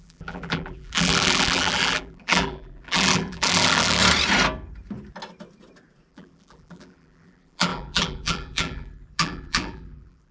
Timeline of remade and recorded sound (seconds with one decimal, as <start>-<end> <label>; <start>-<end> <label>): 0.0-4.0 remade; 4.0-6.1 recorded; 6.1-10.3 remade